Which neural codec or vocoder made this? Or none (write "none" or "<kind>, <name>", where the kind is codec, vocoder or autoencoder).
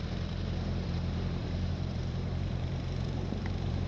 vocoder, BigVGAN v2